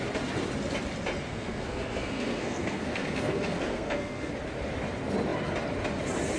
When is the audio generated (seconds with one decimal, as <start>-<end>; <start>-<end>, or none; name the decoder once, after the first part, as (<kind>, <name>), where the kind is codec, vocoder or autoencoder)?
1.3-4.3 (codec, SNAC)